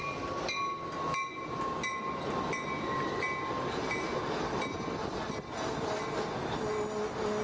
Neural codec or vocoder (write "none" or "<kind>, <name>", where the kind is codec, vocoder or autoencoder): none